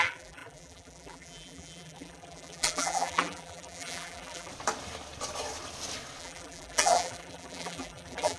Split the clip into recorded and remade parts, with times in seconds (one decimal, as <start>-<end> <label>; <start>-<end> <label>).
0.0-4.5 remade; 4.5-6.2 recorded; 6.2-8.4 remade